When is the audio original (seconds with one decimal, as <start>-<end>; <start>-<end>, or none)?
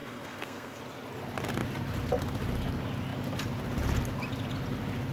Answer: 0.8-5.1